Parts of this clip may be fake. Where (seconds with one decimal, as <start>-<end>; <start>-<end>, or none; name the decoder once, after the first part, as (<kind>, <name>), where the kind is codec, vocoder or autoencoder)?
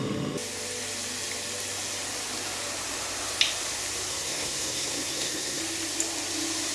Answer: 4.1-5.6 (codec, SNAC)